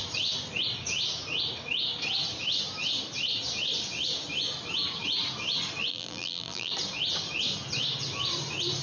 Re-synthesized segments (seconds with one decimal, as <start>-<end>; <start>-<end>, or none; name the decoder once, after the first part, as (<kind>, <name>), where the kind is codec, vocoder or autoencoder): 5.9-6.7 (vocoder, BigVGAN v2)